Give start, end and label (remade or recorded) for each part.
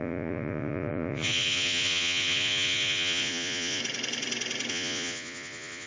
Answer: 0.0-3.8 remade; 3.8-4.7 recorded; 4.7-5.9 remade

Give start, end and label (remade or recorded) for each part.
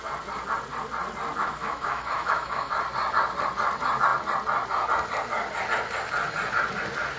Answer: 0.0-1.4 recorded; 1.4-2.7 remade; 2.7-7.2 recorded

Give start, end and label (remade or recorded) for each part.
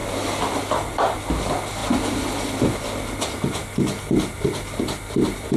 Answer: 0.0-5.6 recorded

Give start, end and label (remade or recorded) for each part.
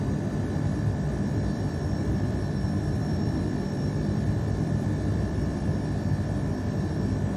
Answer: 0.0-2.0 recorded; 2.0-5.7 remade; 5.7-7.4 recorded